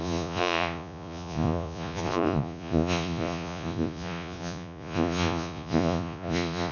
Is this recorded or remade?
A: remade